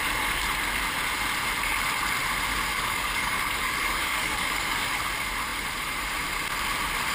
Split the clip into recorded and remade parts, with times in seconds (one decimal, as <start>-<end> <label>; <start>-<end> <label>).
0.0-2.7 recorded; 2.7-5.0 remade; 5.0-7.1 recorded